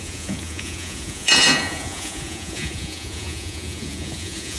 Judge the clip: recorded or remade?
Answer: remade